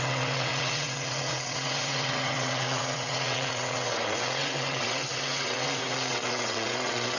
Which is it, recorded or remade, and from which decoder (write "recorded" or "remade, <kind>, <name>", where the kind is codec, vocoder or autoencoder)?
remade, vocoder, WaveNeXt